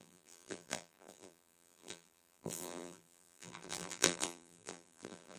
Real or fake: fake